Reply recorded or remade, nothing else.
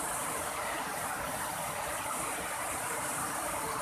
recorded